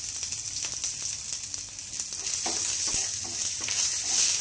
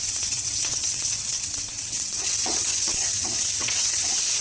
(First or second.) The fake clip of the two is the second